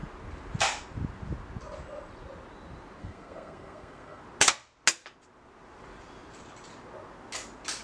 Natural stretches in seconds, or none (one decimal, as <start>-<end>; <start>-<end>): 0.0-3.0; 4.2-7.8